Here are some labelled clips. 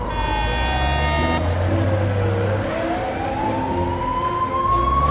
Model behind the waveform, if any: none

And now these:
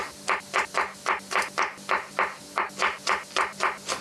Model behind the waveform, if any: none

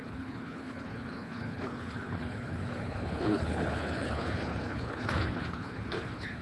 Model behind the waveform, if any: codec, HILCodec